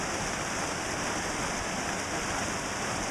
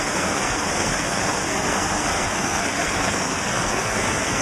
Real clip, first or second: first